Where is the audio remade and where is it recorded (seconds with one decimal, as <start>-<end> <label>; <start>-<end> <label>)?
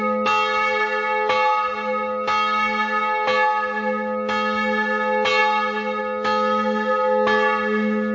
0.0-8.1 recorded